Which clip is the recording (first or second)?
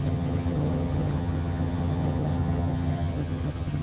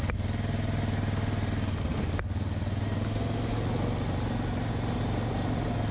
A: second